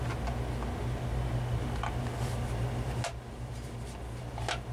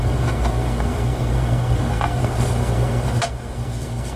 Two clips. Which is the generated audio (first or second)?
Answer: second